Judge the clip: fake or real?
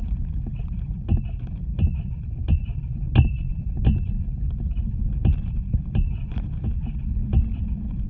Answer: real